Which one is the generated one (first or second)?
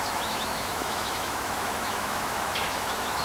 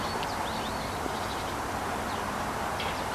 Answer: first